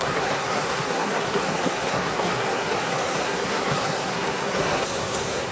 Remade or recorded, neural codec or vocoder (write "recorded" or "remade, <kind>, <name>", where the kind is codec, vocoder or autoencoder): remade, codec, SNAC